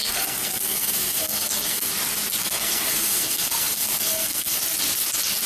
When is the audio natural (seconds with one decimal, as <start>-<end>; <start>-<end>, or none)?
1.9-2.4; 4.6-5.5